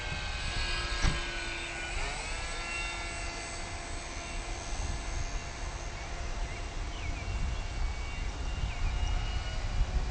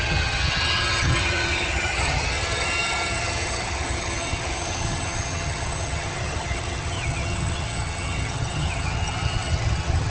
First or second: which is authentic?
first